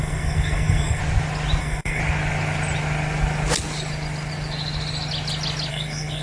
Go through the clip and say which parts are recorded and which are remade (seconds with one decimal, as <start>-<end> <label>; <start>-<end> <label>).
0.0-1.0 remade; 1.0-1.6 recorded; 1.6-2.0 remade; 2.0-5.7 recorded; 5.7-6.2 remade

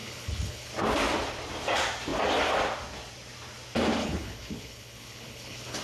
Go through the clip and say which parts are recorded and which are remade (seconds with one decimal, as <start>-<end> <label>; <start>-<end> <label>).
0.0-0.7 remade; 0.7-4.0 recorded; 4.0-5.8 remade